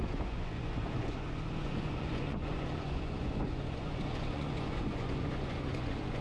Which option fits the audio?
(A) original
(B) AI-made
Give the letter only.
B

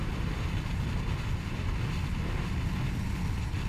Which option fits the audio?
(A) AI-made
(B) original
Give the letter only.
B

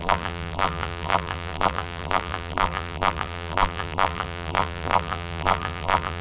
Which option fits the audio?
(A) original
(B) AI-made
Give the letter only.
B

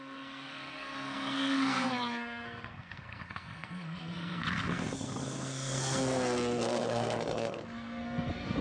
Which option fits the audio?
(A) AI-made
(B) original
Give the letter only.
A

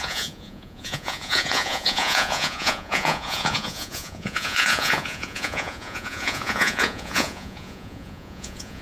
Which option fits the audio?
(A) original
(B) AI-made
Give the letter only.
B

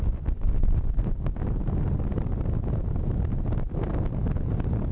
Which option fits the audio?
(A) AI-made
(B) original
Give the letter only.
B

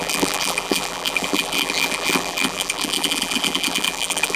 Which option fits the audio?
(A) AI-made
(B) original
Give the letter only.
A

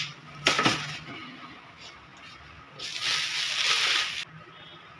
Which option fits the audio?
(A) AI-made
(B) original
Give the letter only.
B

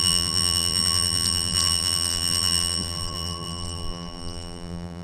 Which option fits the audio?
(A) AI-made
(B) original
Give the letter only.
A